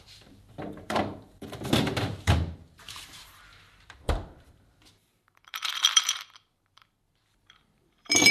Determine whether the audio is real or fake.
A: fake